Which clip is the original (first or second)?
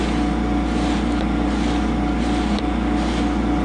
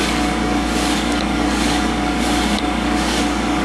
first